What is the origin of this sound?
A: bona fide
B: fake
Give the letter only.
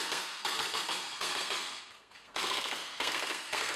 B